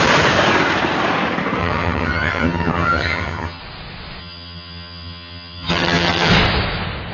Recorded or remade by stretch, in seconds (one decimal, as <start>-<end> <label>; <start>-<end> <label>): 0.0-1.6 recorded; 1.6-3.6 remade; 3.6-4.2 recorded; 4.2-6.3 remade; 6.3-7.1 recorded